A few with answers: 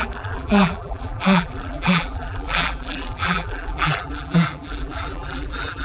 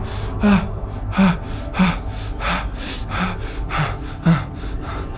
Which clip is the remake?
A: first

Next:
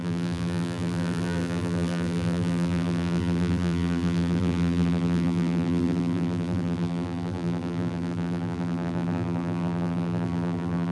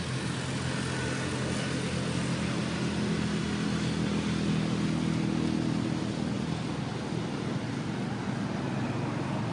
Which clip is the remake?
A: first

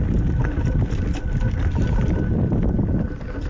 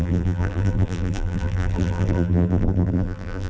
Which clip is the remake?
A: second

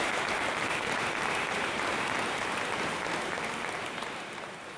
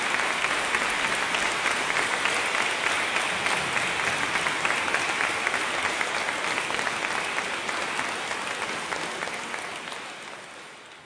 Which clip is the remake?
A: first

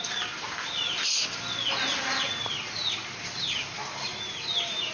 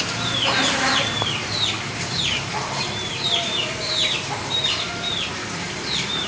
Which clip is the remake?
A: second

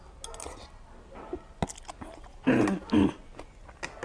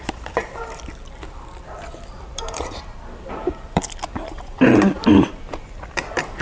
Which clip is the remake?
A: second